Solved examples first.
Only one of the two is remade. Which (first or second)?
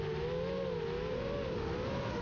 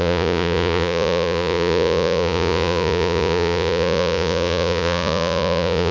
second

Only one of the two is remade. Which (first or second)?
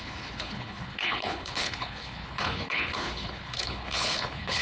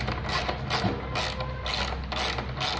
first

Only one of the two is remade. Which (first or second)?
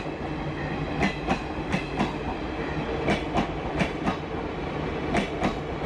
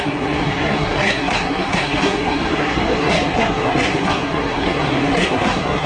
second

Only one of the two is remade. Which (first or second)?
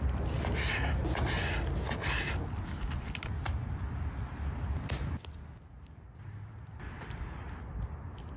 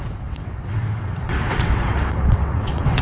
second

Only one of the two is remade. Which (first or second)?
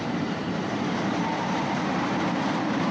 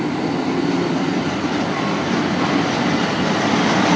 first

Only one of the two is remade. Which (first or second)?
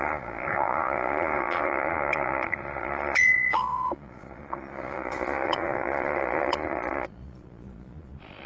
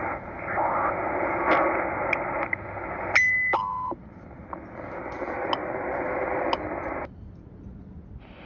first